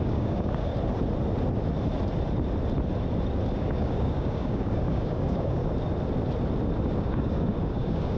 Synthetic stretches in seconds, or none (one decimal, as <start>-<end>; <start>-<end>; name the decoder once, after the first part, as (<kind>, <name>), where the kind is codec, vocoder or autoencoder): 0.0-0.7 (codec, DAC); 3.5-5.6; 6.9-8.2